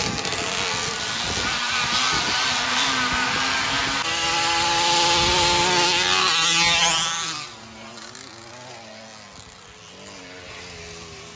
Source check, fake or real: real